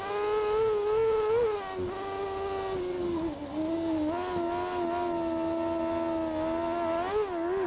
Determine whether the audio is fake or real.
real